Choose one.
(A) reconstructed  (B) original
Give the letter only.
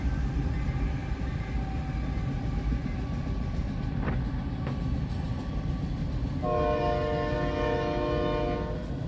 B